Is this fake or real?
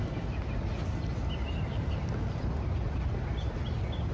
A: real